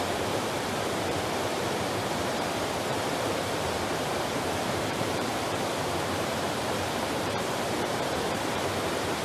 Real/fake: fake